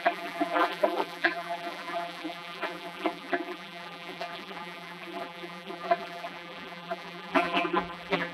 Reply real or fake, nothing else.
fake